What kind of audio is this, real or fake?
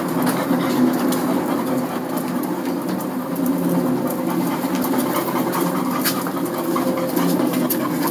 real